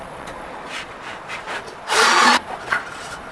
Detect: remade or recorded remade